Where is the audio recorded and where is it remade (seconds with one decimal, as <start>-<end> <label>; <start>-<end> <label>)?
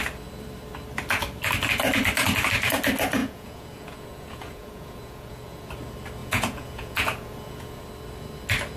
0.0-3.2 recorded; 3.2-5.7 remade; 5.7-6.2 recorded; 6.2-7.8 remade; 7.8-8.8 recorded